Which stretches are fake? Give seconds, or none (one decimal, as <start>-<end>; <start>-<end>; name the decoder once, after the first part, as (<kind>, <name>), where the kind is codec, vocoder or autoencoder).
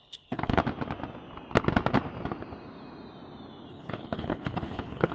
0.0-0.6 (codec, HILCodec); 3.7-5.1